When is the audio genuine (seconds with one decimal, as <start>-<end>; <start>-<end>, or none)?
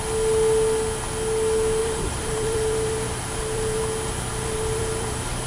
0.0-1.8; 3.8-4.3